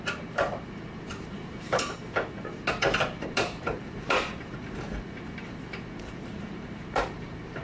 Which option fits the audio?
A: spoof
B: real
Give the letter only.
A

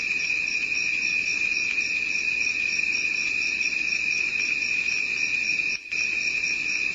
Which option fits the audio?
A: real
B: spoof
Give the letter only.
A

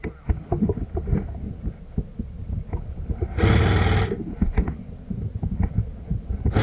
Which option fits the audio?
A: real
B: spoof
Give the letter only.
A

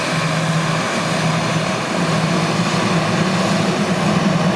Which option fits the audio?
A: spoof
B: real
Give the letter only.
B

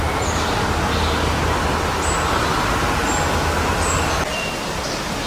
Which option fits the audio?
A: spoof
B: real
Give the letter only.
B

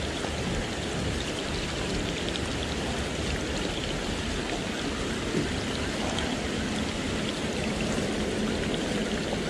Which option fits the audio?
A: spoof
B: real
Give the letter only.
B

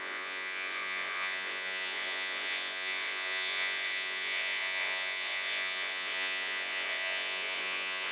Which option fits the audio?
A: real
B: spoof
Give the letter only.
B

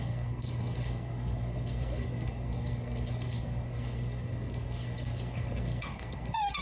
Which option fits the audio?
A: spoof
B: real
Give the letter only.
A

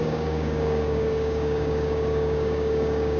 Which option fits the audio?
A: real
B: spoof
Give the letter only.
B